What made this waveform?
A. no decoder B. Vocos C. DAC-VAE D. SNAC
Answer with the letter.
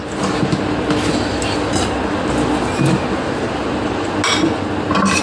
A